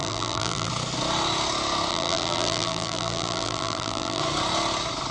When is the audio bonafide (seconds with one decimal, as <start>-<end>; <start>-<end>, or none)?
0.7-1.9; 4.2-5.1